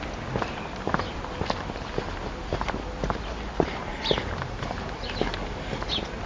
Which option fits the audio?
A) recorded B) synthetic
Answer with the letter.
A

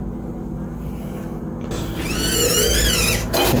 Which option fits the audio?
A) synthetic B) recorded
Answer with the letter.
B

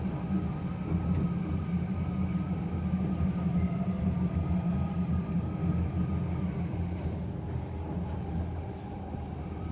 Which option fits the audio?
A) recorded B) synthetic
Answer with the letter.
A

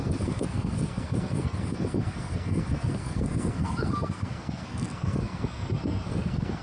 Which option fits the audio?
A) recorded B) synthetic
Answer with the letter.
B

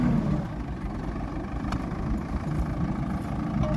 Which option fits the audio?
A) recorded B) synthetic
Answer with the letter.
A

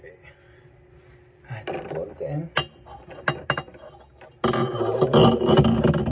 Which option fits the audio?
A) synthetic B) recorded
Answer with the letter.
B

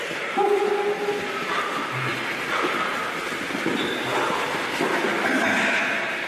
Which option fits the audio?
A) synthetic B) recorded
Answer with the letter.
B